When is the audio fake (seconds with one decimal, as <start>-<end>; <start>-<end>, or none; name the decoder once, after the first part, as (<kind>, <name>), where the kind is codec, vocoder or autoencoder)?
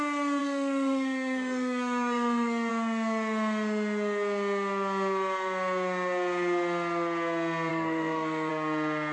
0.4-2.7 (codec, SNAC); 7.7-8.5